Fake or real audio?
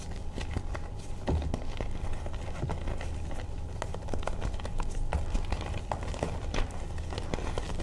real